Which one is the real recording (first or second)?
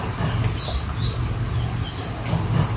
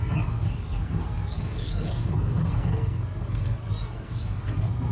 first